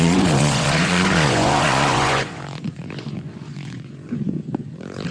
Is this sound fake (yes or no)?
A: yes